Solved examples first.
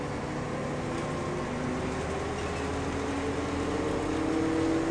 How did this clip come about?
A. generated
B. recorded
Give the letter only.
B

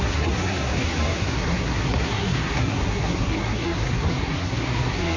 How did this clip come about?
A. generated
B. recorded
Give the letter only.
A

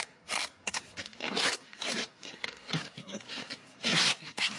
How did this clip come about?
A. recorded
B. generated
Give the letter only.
B